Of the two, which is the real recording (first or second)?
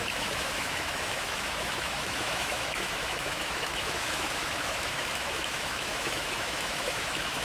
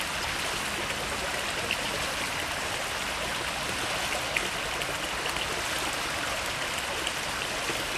second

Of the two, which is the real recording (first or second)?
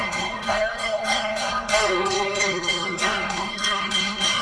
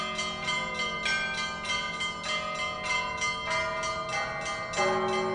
second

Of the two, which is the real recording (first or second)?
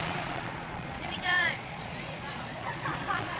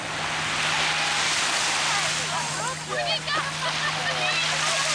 second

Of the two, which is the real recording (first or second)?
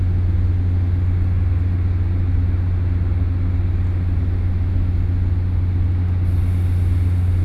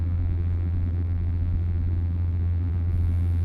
first